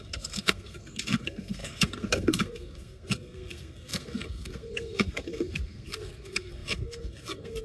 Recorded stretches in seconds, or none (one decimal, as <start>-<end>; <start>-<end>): none